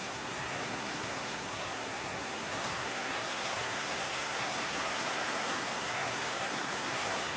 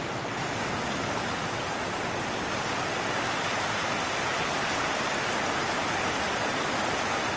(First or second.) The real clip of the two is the second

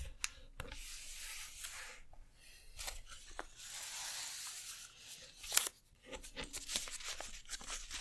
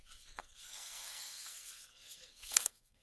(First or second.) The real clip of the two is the first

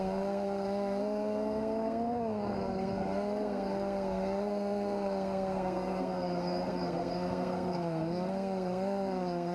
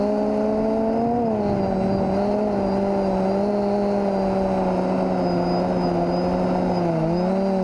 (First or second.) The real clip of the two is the second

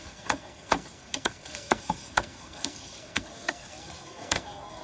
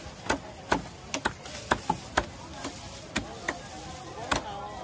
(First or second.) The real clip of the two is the second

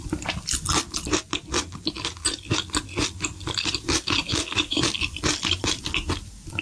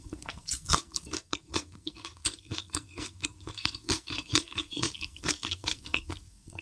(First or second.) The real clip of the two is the first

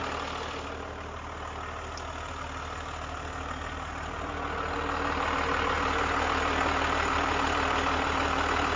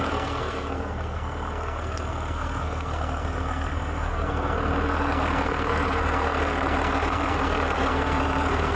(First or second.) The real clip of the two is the first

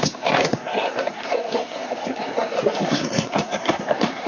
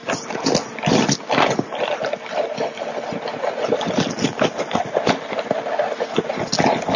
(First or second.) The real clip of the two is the second